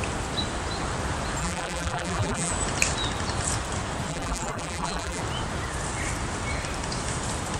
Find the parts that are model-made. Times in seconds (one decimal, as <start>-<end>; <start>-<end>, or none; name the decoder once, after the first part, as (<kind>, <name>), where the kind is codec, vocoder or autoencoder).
1.4-2.5 (vocoder, BigVGAN v2); 4.1-5.2